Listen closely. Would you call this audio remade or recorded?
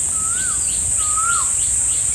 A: recorded